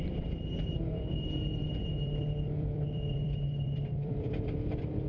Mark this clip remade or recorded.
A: remade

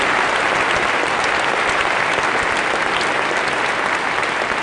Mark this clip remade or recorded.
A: recorded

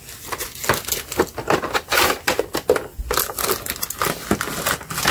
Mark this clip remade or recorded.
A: recorded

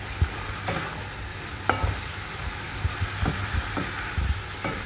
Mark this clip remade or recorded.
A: recorded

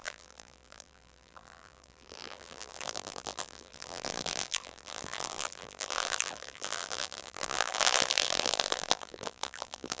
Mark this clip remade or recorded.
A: remade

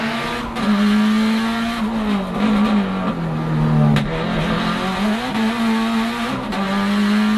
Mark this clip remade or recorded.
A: recorded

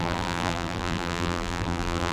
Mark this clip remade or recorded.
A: remade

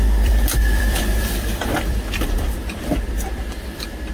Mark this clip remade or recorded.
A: remade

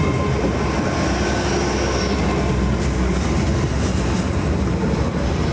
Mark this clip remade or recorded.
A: recorded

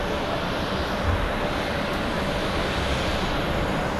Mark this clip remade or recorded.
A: remade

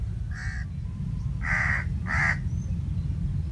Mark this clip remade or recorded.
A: recorded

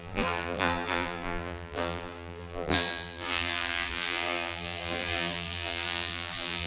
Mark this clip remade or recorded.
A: remade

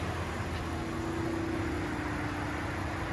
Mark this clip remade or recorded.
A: recorded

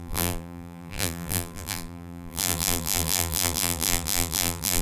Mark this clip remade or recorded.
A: remade